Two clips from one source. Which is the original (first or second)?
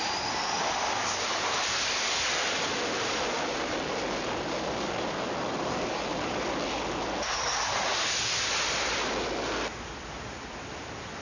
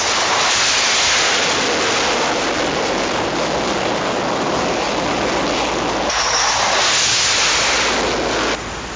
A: second